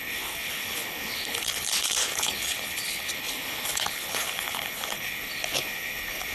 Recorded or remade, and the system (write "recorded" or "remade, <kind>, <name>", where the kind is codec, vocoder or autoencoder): remade, codec, HILCodec